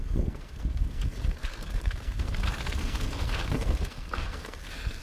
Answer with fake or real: fake